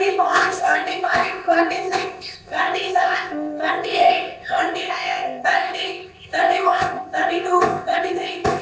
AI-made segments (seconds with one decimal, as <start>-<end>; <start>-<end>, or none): 0.0-8.6